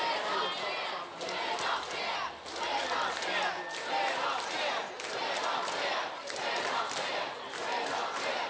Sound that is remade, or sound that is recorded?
recorded